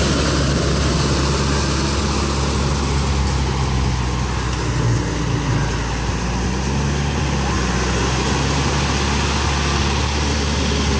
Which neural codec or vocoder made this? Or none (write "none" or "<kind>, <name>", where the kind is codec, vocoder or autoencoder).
none